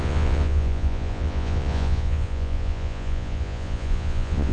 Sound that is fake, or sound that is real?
fake